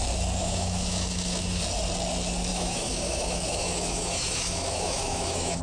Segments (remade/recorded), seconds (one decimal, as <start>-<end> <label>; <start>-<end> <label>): 0.0-0.4 recorded; 0.4-1.6 remade; 1.6-2.5 recorded; 2.5-5.6 remade